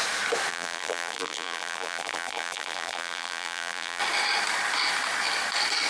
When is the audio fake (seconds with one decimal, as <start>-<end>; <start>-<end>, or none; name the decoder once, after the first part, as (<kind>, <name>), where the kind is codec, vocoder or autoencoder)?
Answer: 0.5-4.0 (vocoder, BigVGAN v2)